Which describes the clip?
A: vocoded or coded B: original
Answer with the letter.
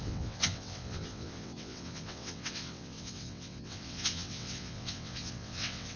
A